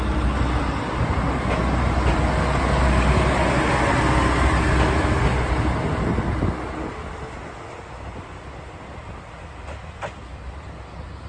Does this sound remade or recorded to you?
recorded